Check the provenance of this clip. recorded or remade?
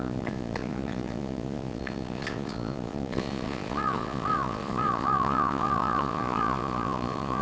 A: remade